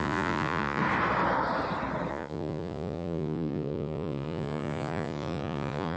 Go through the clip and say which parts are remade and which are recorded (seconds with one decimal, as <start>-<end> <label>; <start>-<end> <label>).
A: 0.0-0.8 remade; 0.8-2.1 recorded; 2.1-6.0 remade